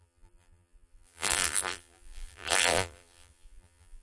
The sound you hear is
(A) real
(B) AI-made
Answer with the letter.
B